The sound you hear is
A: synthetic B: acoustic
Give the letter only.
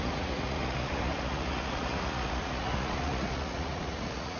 A